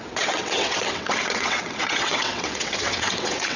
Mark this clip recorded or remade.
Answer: remade